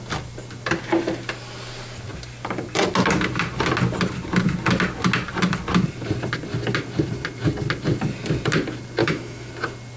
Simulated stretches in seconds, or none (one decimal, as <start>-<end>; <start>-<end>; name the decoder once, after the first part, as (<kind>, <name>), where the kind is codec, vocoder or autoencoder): 9.0-9.5 (autoencoder, DAC-VAE)